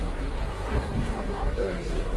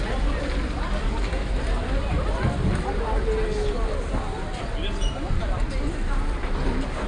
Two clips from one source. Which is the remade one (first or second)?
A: first